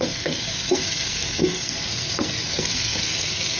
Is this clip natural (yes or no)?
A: no